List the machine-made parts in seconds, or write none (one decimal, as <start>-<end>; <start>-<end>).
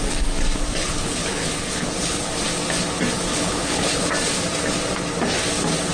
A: 0.8-2.3; 3.3-4.1